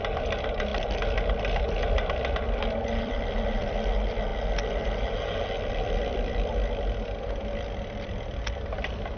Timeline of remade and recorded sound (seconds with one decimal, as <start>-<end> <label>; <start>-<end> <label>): 0.0-0.7 remade; 0.7-3.0 recorded; 3.0-4.3 remade; 4.3-5.7 recorded; 5.7-9.2 remade